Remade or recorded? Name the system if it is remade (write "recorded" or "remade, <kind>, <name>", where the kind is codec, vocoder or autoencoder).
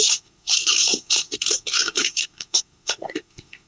remade, codec, SNAC